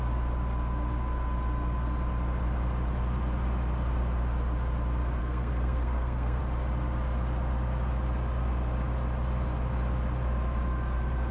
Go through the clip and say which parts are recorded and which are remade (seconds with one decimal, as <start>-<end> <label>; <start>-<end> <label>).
0.0-5.2 recorded; 5.2-6.4 remade; 6.4-11.3 recorded